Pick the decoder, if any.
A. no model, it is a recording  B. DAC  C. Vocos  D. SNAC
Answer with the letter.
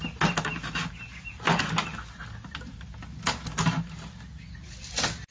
A